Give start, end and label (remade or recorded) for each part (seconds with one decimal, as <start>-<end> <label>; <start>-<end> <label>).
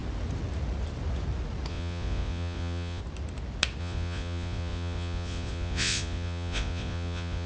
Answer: 0.0-1.7 recorded; 1.7-3.0 remade; 3.0-3.8 recorded; 3.8-7.5 remade